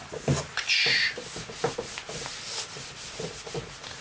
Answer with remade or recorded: recorded